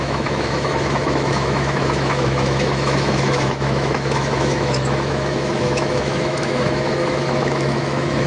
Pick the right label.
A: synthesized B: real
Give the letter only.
A